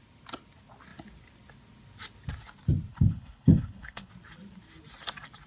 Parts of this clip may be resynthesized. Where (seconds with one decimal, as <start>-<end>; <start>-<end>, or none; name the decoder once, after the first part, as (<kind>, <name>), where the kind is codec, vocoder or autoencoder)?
2.9-4.1 (codec, HILCodec)